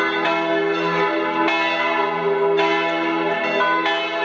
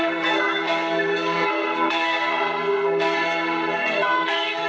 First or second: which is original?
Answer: first